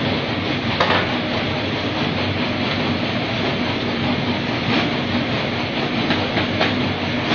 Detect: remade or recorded recorded